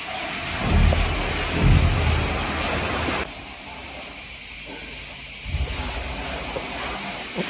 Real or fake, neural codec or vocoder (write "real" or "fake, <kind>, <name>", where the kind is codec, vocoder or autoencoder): real